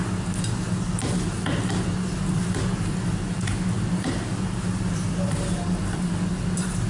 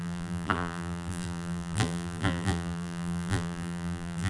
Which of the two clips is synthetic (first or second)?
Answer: second